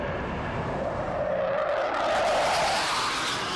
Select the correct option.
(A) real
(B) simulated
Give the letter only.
A